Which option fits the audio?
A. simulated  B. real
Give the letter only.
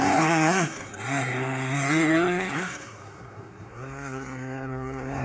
A